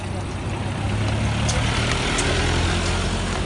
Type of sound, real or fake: real